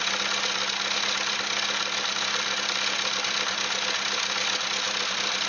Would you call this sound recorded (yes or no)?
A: yes